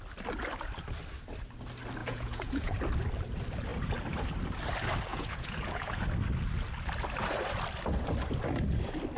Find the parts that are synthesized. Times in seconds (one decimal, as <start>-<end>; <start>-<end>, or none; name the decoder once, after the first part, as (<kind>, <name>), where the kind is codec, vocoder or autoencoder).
2.0-2.8 (vocoder, Vocos); 5.1-6.0

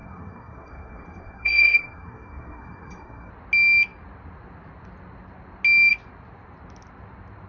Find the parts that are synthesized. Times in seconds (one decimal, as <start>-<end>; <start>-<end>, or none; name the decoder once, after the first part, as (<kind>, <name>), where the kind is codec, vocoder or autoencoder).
0.0-3.3 (codec, SNAC)

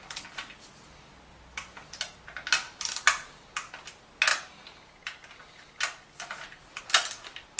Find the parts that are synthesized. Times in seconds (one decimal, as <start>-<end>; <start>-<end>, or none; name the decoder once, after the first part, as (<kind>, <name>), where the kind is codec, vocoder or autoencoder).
none

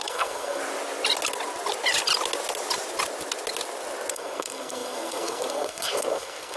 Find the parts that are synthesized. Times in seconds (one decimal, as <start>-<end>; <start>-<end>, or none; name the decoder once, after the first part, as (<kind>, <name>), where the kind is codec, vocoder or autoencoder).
0.0-0.6 (codec, SNAC); 4.1-6.6